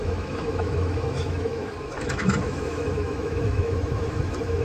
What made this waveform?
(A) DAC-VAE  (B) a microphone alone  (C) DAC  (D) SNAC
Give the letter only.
A